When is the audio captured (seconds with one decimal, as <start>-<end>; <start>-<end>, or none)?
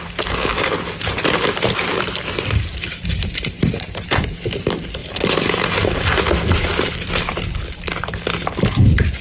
0.0-0.5; 4.4-5.0; 6.2-6.7; 7.6-9.2